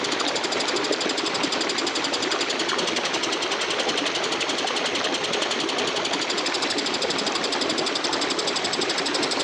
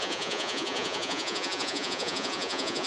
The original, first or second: first